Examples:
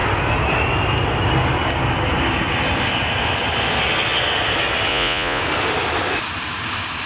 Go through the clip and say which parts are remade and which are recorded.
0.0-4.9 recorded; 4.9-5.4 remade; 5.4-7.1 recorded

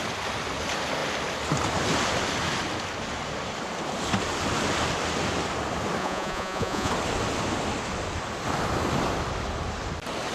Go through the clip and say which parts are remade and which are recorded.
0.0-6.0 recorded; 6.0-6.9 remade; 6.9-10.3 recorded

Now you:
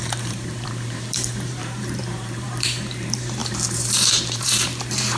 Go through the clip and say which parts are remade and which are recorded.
0.0-5.2 remade